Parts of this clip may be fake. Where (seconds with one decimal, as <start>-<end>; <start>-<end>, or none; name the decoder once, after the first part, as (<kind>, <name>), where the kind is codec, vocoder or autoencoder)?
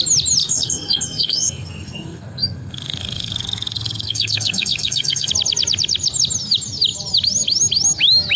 0.4-5.3 (codec, SNAC)